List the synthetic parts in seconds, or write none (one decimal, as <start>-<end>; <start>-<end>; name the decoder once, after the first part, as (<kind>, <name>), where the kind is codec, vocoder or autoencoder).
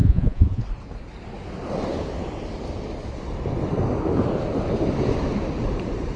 0.0-0.6 (vocoder, Vocos)